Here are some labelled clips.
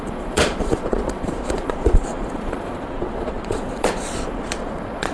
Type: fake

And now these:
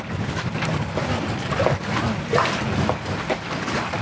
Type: real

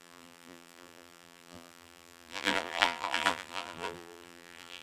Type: fake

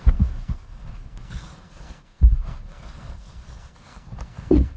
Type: fake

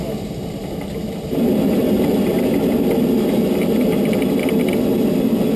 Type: fake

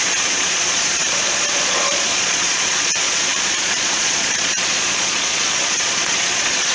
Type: fake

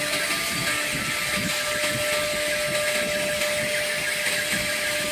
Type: real